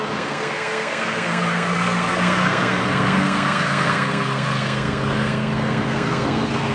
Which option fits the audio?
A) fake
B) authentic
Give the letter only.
A